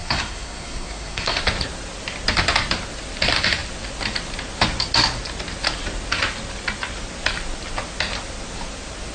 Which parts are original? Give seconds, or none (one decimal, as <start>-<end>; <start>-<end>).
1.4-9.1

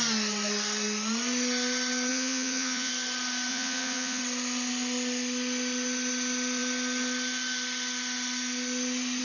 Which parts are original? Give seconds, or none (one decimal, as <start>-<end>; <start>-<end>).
0.0-2.1; 2.9-3.5; 4.2-9.2

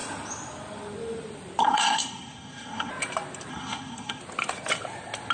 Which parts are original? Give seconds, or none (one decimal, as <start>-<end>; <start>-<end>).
0.0-1.6; 2.9-3.5; 4.2-5.3